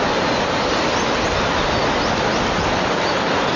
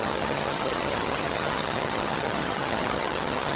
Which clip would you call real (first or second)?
first